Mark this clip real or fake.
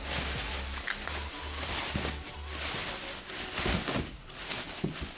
real